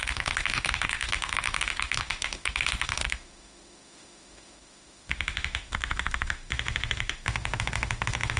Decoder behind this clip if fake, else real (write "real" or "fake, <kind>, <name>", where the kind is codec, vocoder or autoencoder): fake, autoencoder, DAC-VAE